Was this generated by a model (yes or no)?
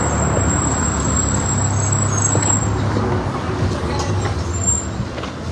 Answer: no